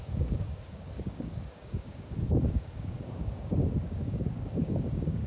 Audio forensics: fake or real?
fake